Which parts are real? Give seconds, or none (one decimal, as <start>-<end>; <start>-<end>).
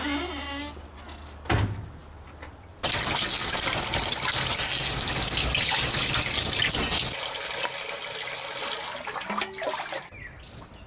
0.0-10.9